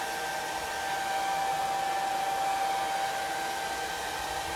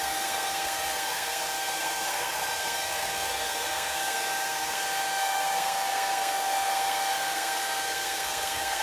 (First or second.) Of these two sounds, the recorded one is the first